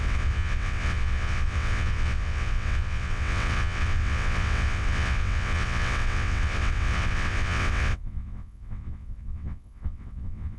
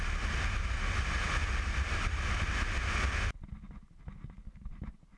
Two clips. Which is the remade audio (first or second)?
first